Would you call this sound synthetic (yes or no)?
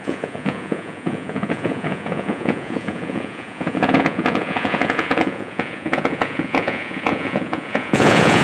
yes